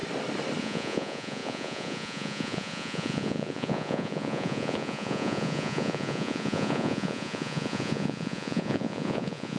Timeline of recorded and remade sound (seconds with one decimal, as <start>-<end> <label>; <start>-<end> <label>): 0.0-0.6 recorded; 0.6-9.6 remade